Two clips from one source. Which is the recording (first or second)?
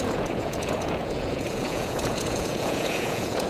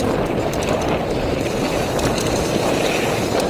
second